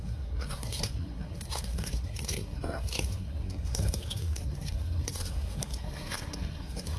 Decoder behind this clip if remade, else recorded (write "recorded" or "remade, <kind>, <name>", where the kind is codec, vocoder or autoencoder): remade, codec, SNAC